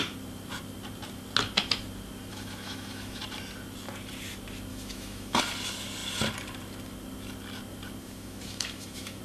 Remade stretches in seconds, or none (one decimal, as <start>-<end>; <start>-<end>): 2.3-3.2; 4.7-5.4; 8.0-9.2

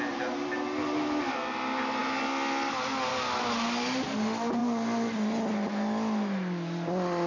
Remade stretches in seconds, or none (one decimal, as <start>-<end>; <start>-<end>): none

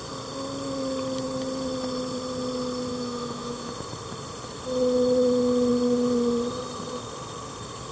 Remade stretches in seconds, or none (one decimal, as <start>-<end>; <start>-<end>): 2.9-3.7

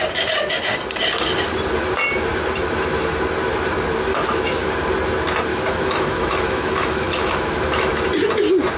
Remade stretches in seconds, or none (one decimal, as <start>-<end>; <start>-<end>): 4.1-4.8; 5.5-8.0

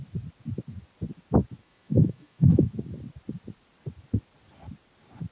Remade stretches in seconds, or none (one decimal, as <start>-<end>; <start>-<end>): 1.6-2.7